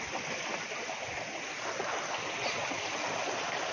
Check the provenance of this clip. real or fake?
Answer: real